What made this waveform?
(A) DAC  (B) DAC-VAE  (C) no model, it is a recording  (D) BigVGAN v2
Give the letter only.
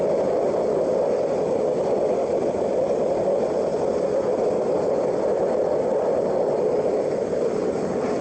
C